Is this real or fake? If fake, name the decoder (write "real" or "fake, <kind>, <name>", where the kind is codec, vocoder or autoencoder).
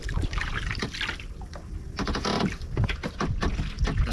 fake, vocoder, BigVGAN v2